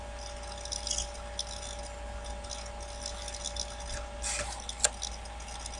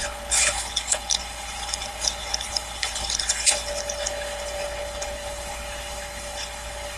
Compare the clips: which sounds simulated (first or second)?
second